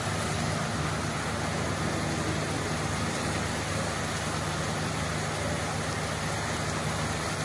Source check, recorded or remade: recorded